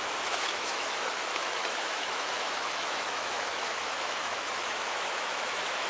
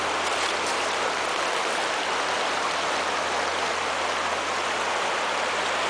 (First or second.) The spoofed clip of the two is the first